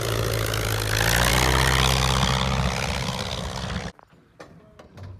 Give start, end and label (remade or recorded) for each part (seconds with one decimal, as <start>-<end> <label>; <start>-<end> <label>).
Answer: 0.0-5.2 recorded